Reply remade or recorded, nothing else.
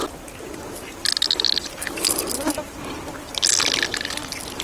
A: recorded